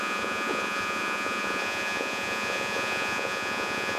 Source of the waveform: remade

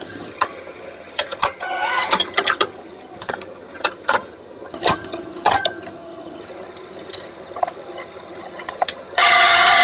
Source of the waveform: remade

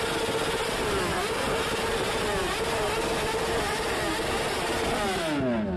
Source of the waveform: recorded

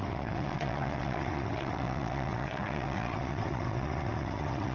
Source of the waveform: remade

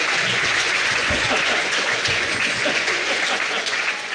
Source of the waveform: remade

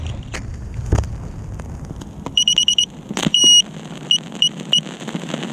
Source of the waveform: recorded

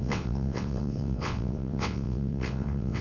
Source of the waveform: remade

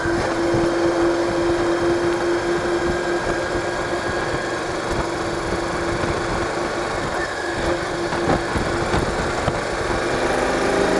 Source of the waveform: recorded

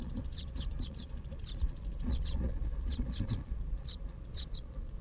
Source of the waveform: remade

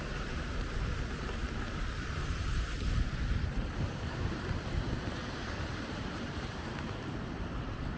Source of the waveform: remade